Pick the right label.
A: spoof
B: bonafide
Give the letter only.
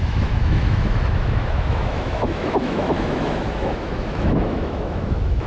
A